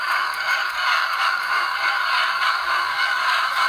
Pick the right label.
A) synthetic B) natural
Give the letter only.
A